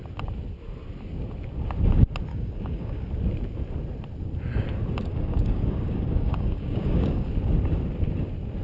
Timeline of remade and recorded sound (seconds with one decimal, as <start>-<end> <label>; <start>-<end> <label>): 0.0-2.3 recorded; 2.3-3.1 remade; 3.1-5.1 recorded; 5.1-7.3 remade; 7.3-8.6 recorded